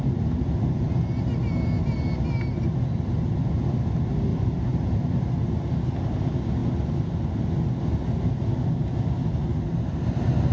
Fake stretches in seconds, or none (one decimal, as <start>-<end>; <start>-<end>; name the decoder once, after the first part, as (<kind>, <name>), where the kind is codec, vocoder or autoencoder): 4.3-5.3 (vocoder, BigVGAN v2)